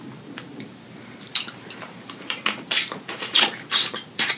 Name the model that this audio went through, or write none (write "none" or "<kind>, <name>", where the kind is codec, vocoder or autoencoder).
vocoder, BigVGAN v2